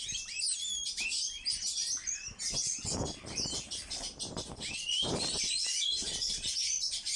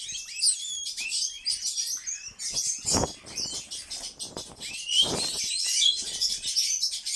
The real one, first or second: second